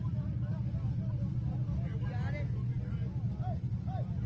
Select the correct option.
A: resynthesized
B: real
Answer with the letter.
B